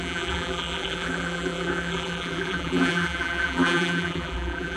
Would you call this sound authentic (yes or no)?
no